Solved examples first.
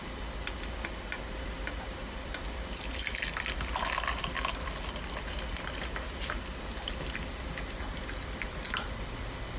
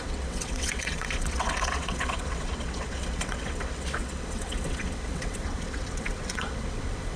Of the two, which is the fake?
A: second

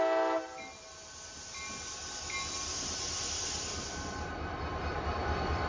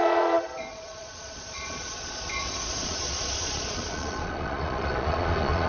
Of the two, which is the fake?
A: second